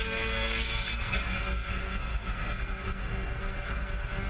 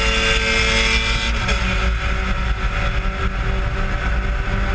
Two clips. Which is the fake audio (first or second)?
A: first